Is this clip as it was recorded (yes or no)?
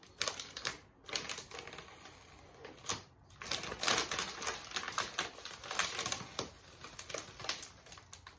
yes